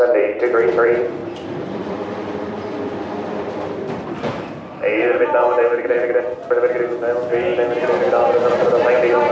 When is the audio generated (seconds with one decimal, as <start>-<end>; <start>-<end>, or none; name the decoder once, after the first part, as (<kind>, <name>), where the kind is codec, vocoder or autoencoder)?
0.0-7.5 (vocoder, BigVGAN v2); 8.3-9.3